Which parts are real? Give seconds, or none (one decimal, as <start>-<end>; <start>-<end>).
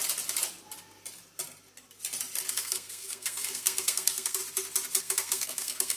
0.0-2.5; 4.4-5.0